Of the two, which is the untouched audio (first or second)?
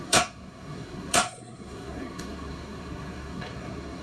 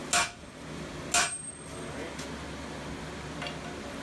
second